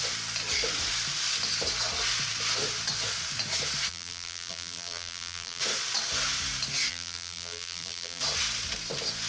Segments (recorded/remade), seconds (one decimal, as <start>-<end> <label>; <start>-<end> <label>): 0.0-3.9 recorded; 3.9-5.6 remade; 5.6-6.9 recorded; 6.9-8.2 remade; 8.2-9.3 recorded